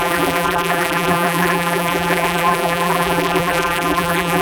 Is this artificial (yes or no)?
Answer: yes